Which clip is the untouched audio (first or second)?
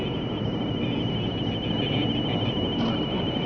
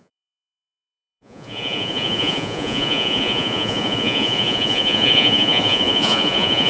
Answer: first